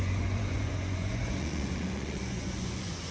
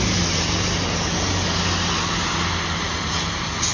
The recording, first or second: second